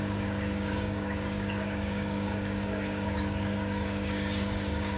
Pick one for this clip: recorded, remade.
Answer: remade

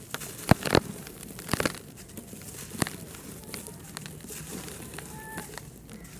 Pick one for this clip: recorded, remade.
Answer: remade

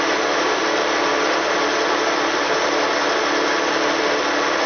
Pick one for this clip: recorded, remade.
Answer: recorded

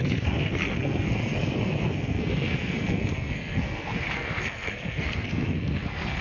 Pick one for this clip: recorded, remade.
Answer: remade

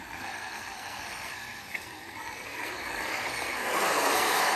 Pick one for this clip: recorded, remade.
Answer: remade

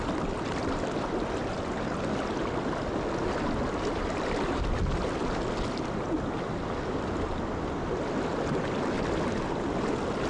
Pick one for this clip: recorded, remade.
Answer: recorded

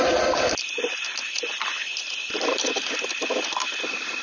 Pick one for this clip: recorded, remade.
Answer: recorded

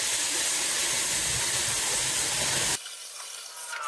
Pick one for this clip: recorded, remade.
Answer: recorded